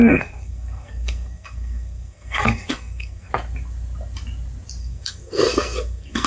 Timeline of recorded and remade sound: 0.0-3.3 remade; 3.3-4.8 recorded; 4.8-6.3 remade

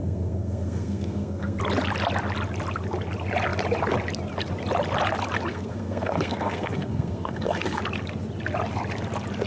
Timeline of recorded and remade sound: 0.0-1.6 remade; 1.6-5.5 recorded; 5.5-7.8 remade; 7.8-9.5 recorded